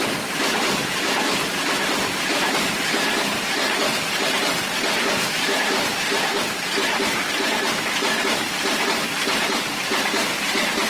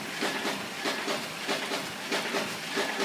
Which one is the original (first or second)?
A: second